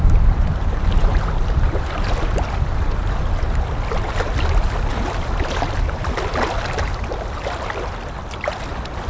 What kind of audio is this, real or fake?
real